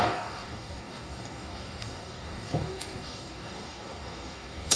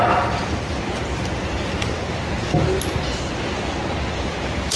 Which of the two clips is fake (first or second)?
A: first